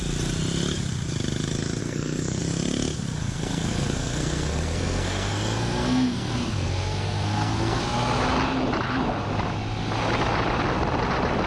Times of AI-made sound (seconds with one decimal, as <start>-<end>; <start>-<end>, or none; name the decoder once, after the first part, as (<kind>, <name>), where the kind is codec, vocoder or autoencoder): 1.8-2.4 (codec, SNAC); 3.2-7.8